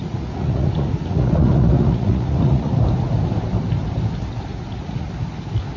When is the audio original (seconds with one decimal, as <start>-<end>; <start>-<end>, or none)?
2.8-4.5; 5.1-5.8